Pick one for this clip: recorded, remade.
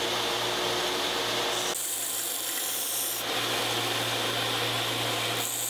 recorded